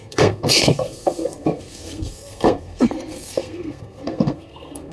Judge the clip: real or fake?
fake